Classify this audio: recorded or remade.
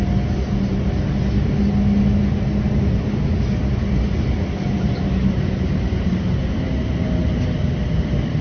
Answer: recorded